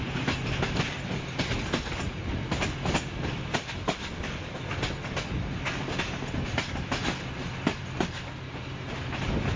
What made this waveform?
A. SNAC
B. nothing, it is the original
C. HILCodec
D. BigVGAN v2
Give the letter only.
B